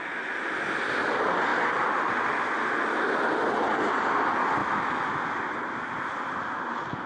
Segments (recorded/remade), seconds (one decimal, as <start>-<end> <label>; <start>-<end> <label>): 0.0-4.6 recorded; 4.6-5.2 remade; 5.2-7.1 recorded